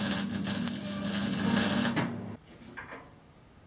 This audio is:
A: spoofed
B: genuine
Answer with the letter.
B